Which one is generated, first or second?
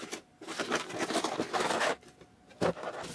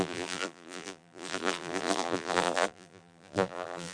second